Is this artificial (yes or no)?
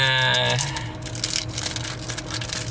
no